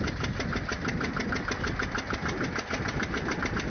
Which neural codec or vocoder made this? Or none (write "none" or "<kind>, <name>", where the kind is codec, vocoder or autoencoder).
none